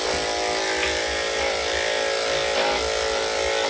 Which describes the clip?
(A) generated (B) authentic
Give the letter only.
B